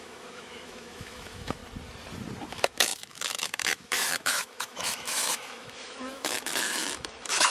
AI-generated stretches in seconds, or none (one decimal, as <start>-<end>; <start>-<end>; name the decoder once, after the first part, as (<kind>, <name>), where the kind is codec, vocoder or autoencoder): 0.0-1.6 (autoencoder, DAC-VAE); 2.5-7.5